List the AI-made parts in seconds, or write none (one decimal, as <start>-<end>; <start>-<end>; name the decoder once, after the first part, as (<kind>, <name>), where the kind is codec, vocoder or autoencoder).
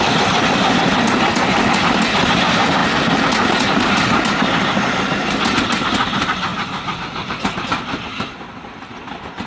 none